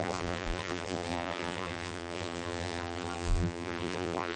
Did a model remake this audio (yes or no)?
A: yes